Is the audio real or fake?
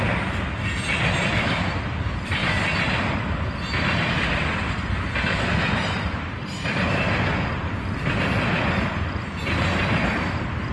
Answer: real